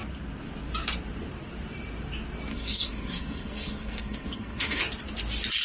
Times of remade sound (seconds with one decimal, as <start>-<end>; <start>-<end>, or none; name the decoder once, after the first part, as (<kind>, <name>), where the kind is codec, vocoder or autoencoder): 2.5-4.8 (codec, SNAC)